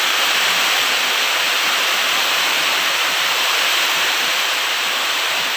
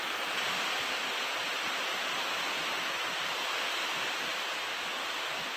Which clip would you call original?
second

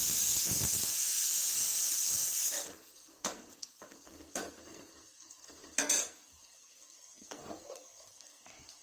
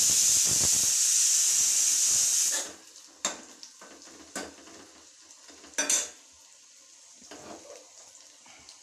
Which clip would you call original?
second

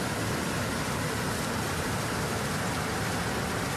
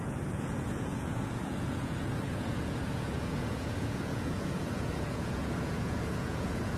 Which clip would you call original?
first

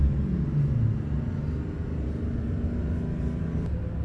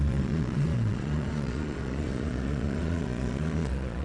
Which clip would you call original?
first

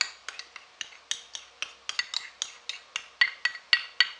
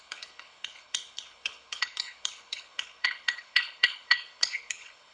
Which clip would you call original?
first